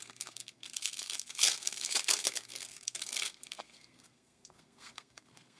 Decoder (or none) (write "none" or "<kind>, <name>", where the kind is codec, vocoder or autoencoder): codec, SNAC